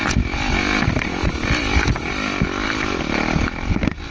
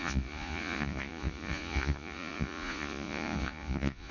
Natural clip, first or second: first